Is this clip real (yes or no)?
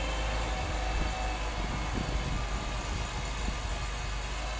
yes